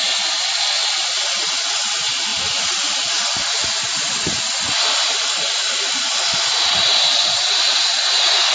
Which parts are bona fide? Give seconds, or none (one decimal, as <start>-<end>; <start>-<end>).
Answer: 0.0-8.5